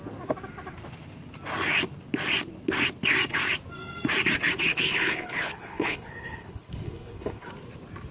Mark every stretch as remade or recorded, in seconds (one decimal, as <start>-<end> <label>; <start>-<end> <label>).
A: 0.0-4.7 recorded; 4.7-7.5 remade; 7.5-8.1 recorded